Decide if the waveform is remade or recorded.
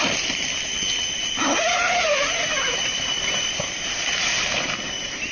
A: recorded